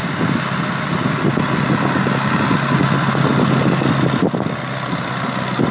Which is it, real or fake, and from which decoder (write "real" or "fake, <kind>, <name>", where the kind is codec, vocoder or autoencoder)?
real